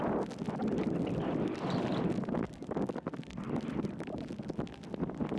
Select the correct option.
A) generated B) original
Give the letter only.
B